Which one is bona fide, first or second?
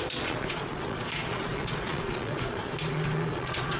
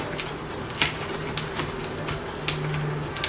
second